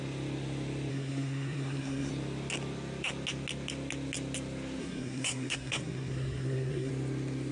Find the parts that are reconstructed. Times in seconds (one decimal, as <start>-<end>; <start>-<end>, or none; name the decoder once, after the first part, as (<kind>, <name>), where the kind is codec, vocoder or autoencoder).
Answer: 0.9-2.1 (codec, SNAC); 4.8-6.9